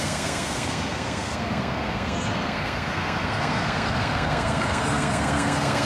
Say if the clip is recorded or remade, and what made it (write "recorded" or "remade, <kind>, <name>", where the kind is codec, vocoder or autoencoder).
remade, codec, SNAC